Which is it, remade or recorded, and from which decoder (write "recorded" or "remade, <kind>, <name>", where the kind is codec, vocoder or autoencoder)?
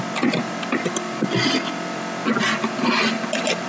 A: recorded